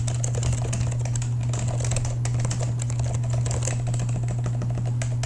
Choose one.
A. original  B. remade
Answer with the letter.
A